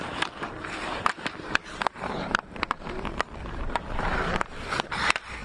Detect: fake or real fake